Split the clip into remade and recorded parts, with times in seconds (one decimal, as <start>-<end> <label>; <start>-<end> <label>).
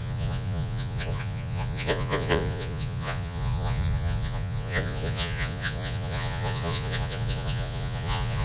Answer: 0.0-8.4 remade